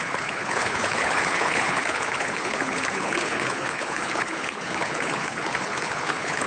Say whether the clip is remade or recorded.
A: remade